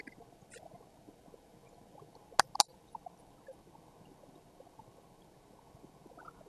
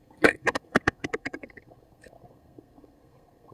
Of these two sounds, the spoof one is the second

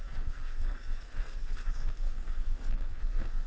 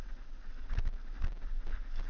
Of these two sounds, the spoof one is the first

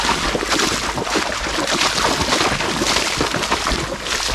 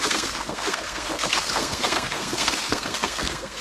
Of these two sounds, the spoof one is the second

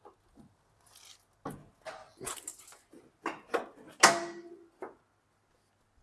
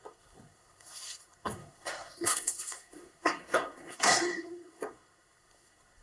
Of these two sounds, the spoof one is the second